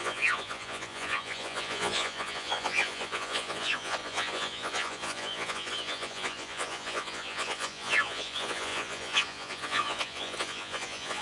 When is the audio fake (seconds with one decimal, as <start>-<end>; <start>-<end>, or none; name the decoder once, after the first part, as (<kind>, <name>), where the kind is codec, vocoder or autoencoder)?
0.0-11.2 (vocoder, Vocos)